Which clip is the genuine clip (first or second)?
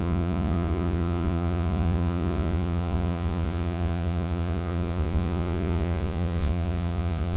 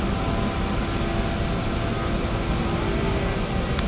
second